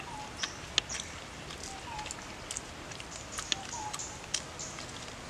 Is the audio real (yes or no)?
yes